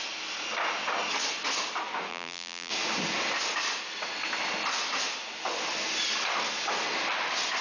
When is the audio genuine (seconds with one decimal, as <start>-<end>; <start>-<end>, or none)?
0.0-2.1; 2.7-7.6